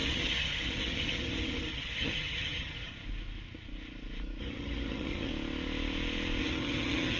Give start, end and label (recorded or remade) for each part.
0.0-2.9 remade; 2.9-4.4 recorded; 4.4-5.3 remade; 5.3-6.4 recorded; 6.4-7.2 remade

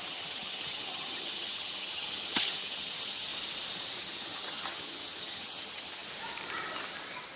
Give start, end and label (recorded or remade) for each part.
0.0-3.3 remade; 3.3-4.0 recorded; 4.0-6.0 remade; 6.0-7.4 recorded

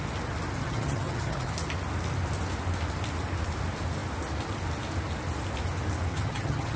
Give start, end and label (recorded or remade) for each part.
0.0-0.6 recorded; 0.6-1.5 remade; 1.5-6.1 recorded; 6.1-6.8 remade